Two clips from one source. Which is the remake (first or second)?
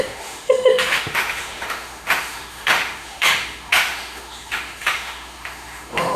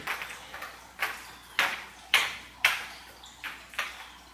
first